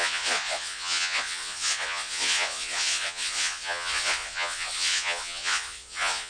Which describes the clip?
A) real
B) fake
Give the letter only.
B